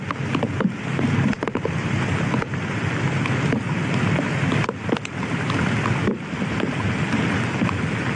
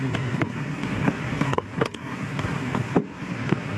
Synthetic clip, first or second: second